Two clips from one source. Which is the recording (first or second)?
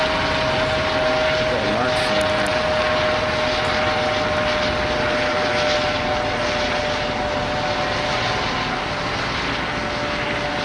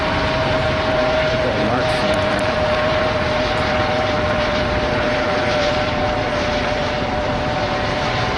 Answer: first